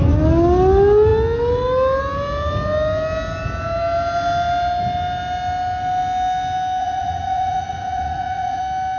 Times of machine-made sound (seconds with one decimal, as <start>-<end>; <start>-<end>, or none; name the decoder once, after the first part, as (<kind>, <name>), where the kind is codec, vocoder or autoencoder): 6.8-8.6 (vocoder, Vocos)